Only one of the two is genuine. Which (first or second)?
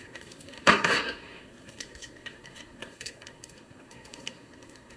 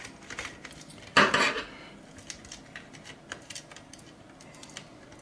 second